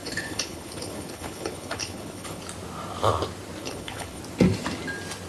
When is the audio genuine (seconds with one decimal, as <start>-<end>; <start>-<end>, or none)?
2.4-3.6; 4.2-5.3